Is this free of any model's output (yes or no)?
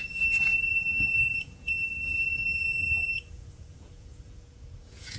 no